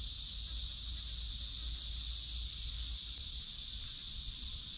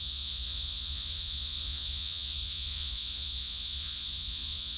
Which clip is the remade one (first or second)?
second